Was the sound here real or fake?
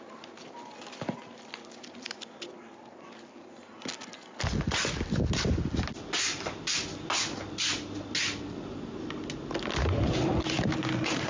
real